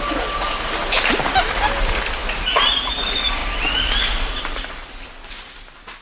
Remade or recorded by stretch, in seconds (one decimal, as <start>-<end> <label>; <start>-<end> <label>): 0.0-6.0 recorded